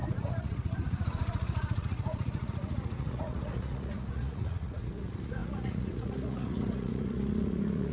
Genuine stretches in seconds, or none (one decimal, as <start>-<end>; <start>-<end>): none